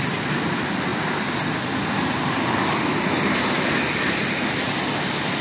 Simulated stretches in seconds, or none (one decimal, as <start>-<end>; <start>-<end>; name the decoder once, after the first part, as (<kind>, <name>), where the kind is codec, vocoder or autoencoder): none